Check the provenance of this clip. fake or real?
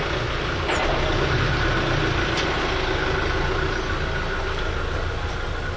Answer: real